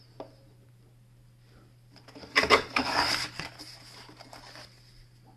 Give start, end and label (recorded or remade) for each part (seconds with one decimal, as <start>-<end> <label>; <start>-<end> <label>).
0.0-2.2 recorded; 2.2-3.1 remade; 3.1-5.4 recorded